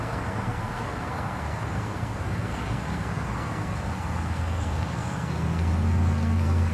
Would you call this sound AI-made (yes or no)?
yes